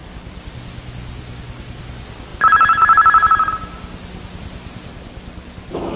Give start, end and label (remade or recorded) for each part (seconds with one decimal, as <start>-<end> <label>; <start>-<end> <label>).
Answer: 0.0-6.0 recorded